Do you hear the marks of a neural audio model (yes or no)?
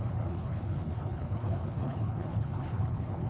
yes